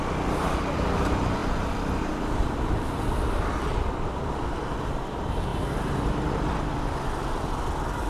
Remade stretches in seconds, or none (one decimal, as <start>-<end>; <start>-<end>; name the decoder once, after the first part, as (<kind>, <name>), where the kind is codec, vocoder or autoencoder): 0.0-5.5 (vocoder, BigVGAN v2); 6.5-8.1